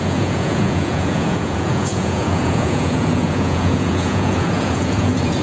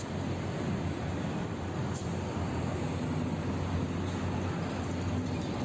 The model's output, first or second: first